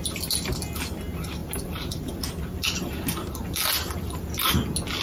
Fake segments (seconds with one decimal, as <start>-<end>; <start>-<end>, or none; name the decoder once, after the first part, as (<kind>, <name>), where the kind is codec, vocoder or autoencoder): 1.4-2.3 (vocoder, BigVGAN v2)